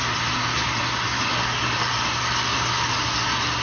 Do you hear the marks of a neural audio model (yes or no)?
no